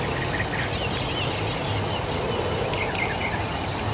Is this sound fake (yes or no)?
no